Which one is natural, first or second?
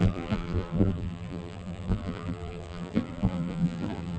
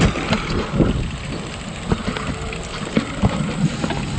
second